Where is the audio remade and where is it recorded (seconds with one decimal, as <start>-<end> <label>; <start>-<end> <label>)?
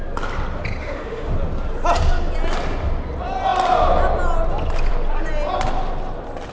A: 0.0-0.8 recorded; 0.8-1.3 remade; 1.3-6.5 recorded